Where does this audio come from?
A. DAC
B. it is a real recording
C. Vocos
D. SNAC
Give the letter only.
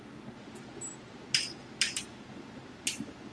B